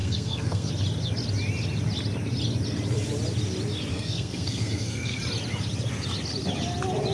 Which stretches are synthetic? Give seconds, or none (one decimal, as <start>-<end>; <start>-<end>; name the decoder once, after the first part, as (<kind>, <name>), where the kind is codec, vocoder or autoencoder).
0.0-0.7 (codec, SNAC); 3.9-5.2